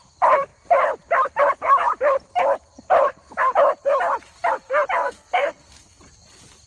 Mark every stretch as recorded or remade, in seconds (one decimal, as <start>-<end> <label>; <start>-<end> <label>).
0.0-5.0 recorded; 5.0-6.0 remade; 6.0-6.7 recorded